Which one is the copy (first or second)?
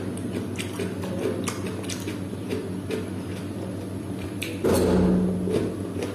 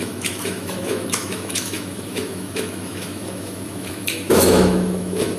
second